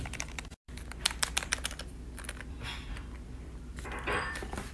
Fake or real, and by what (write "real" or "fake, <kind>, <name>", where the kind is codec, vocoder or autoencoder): fake, vocoder, BigVGAN v2